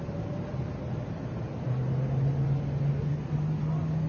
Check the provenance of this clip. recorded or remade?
recorded